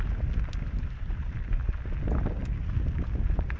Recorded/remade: recorded